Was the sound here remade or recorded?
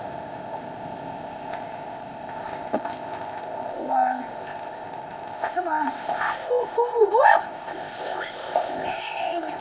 remade